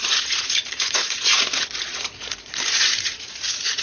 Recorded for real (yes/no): no